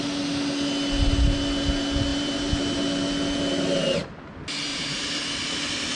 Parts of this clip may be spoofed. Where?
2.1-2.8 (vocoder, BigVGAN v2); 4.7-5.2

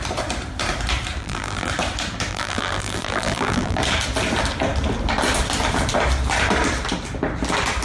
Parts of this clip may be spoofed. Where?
1.2-1.7 (vocoder, BigVGAN v2); 2.3-3.8

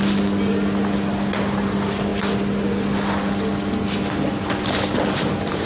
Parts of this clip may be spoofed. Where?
none